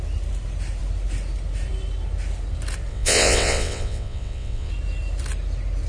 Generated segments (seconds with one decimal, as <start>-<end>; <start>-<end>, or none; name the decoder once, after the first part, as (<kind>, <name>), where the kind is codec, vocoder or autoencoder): 2.9-4.7 (vocoder, WaveNeXt)